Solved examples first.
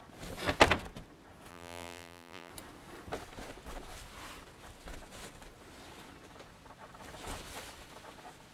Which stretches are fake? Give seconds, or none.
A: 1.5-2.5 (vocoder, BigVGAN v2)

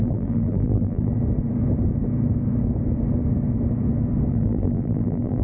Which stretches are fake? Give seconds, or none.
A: 0.0-1.1 (vocoder, BigVGAN v2); 4.3-5.4